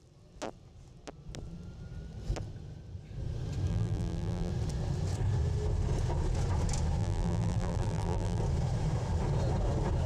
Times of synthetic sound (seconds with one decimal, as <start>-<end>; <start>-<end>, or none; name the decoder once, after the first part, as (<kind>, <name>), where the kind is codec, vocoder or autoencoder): 3.7-4.5 (vocoder, BigVGAN v2); 7.0-8.4